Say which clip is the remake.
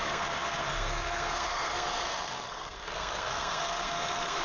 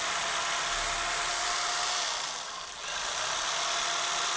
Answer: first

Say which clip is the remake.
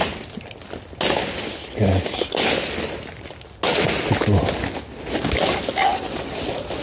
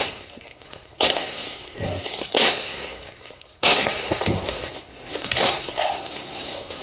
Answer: second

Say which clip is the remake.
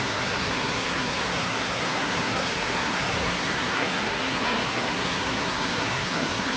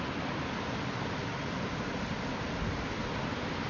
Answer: first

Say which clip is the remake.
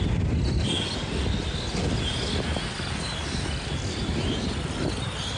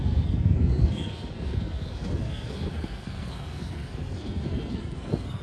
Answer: second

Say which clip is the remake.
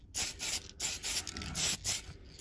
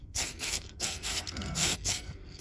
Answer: second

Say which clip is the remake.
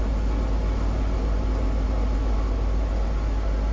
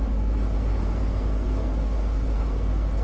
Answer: second